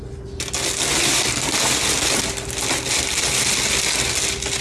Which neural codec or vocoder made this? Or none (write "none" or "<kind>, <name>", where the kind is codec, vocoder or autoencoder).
none